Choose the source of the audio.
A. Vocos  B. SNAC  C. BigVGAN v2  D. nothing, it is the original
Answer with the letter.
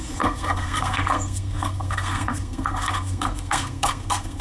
B